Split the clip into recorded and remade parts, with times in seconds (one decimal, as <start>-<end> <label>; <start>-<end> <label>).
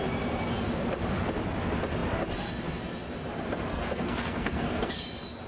0.0-3.7 recorded; 3.7-4.9 remade; 4.9-5.5 recorded